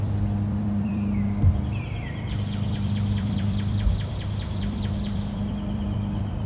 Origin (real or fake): fake